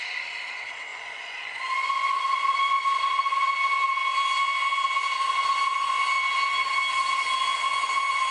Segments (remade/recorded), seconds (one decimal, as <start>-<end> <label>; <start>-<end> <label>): 0.0-0.9 recorded; 0.9-3.4 remade; 3.4-8.3 recorded